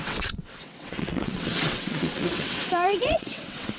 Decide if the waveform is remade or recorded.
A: remade